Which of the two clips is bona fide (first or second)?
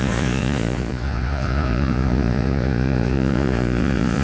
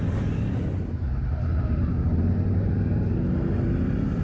second